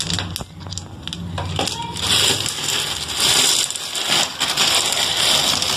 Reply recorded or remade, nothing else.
recorded